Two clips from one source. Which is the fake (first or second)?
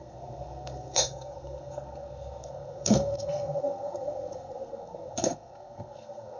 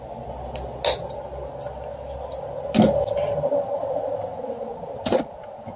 first